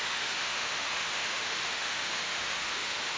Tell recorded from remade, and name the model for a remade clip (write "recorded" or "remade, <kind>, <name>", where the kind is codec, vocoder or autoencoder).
remade, autoencoder, DAC-VAE